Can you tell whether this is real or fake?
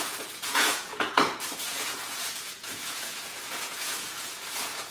fake